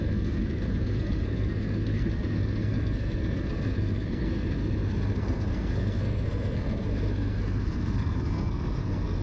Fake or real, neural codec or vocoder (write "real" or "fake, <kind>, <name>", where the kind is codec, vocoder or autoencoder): fake, codec, SNAC